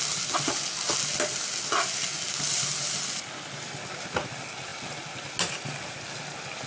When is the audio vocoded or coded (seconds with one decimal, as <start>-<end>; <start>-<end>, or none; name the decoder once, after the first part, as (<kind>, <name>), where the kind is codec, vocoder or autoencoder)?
none